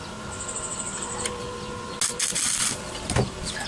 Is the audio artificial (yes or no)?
no